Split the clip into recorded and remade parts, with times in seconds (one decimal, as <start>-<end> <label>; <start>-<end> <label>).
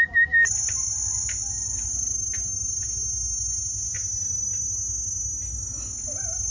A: 0.0-6.5 recorded